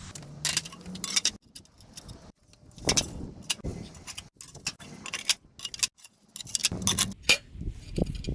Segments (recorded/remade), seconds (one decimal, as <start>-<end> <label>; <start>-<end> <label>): 0.0-8.3 recorded